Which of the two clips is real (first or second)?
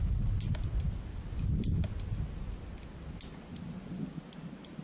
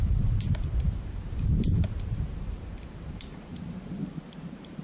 first